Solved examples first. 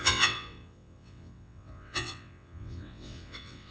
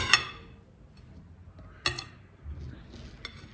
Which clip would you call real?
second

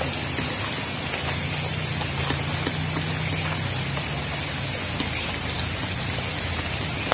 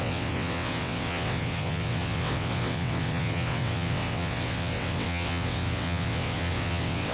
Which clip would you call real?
first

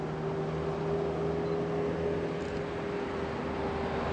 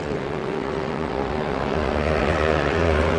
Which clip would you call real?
first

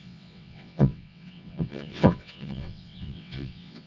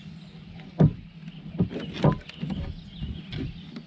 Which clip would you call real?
second